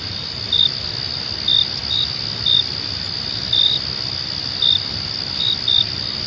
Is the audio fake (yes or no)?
no